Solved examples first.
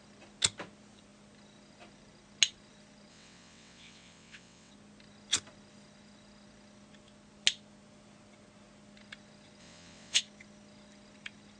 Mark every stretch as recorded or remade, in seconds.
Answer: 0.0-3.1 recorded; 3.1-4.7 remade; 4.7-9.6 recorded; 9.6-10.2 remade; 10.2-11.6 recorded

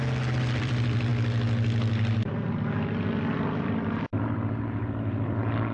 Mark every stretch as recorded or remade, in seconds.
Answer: 0.0-1.1 remade; 1.1-3.6 recorded; 3.6-5.7 remade

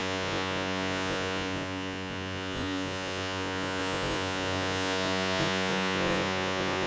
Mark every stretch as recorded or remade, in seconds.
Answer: 0.0-6.9 remade

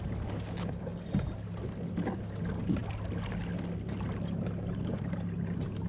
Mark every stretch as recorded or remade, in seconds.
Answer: 0.0-5.9 recorded

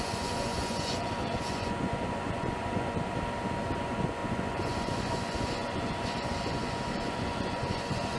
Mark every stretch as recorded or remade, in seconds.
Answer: 0.0-3.1 remade; 3.1-3.8 recorded; 3.8-8.2 remade

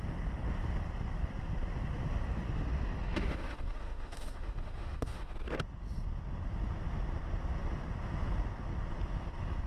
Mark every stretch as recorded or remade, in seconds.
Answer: 0.0-3.1 recorded; 3.1-5.3 remade; 5.3-9.7 recorded

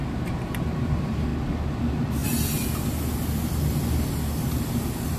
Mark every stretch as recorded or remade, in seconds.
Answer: 0.0-1.3 remade; 1.3-1.8 recorded; 1.8-2.2 remade; 2.2-4.7 recorded; 4.7-5.2 remade

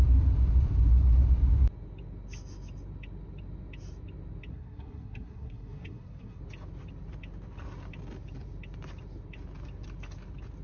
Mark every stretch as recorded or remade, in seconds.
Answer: 0.0-4.5 recorded; 4.5-6.4 remade; 6.4-10.6 recorded